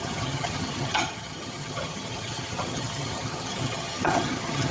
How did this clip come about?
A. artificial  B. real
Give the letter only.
A